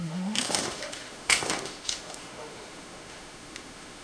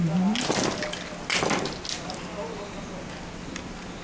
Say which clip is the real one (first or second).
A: second